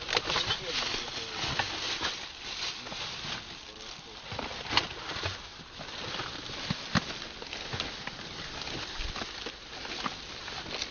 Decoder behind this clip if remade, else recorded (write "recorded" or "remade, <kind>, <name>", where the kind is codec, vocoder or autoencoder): recorded